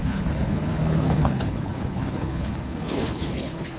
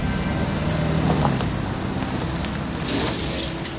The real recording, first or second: second